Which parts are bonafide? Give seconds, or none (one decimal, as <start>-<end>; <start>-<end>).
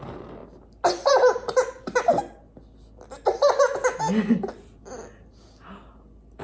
0.0-6.4